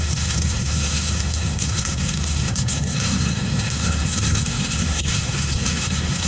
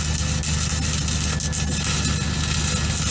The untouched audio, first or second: second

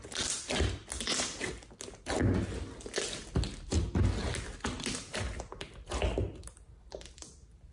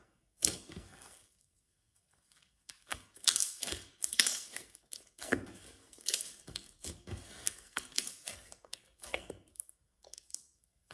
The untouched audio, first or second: first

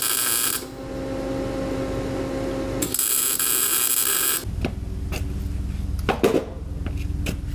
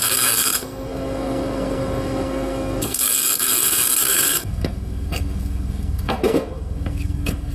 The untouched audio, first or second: first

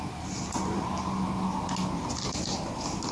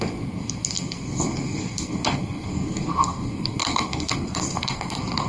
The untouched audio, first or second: first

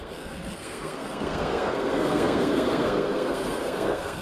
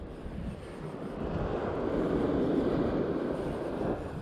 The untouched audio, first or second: second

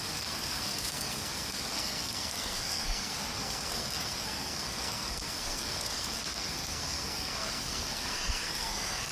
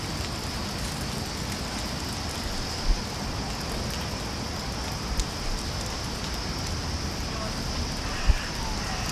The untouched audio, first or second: second